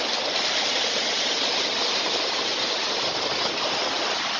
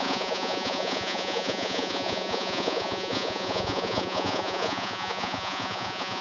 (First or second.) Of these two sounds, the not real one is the second